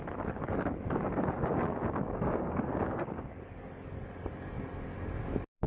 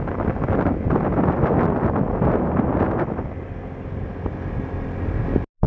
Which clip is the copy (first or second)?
first